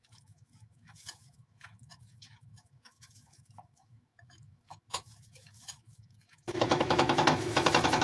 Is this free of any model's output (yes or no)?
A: no